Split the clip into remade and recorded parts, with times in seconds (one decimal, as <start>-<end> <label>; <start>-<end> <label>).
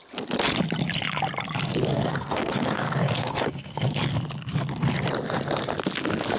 0.0-1.9 recorded; 1.9-4.0 remade; 4.0-6.4 recorded